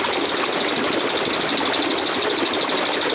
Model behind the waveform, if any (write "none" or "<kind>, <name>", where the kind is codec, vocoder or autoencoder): vocoder, BigVGAN v2